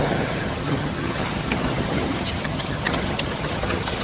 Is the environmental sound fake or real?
fake